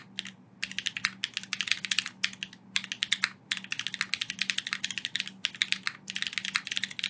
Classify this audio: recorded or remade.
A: recorded